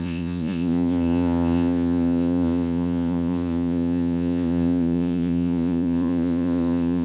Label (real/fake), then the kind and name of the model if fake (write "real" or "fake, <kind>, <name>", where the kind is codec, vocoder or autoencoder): fake, vocoder, Vocos